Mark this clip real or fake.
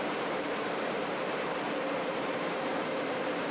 fake